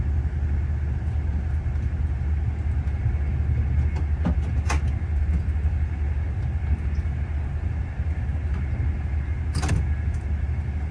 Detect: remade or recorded recorded